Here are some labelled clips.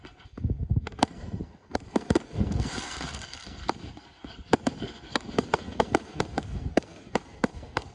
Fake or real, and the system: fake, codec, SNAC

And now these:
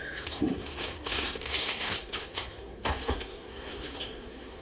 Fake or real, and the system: fake, codec, SNAC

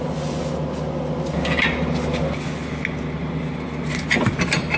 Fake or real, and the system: real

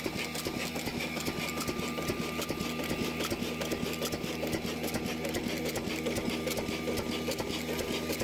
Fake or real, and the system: real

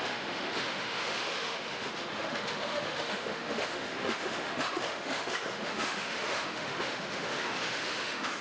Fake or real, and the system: fake, autoencoder, DAC-VAE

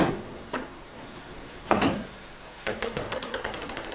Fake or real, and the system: fake, codec, SNAC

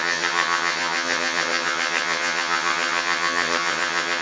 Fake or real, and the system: fake, vocoder, HiFi-GAN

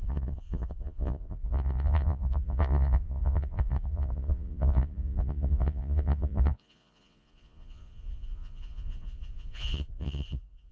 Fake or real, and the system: fake, vocoder, Vocos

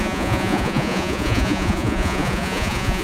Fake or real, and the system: fake, vocoder, Vocos